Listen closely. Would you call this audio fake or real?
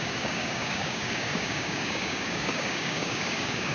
fake